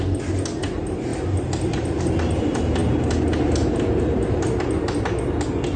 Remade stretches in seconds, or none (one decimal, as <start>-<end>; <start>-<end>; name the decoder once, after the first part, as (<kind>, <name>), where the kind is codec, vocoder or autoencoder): none